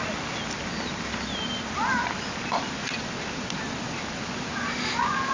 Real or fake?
real